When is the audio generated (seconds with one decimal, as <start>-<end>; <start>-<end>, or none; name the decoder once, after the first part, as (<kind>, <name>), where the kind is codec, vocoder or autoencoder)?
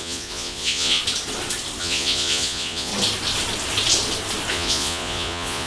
0.0-1.0 (vocoder, Vocos); 1.8-2.9; 4.5-5.7